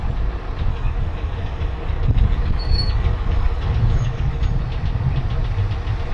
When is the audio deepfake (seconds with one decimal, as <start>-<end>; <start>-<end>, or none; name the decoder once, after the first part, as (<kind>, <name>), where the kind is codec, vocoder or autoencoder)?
0.7-4.4 (codec, DAC)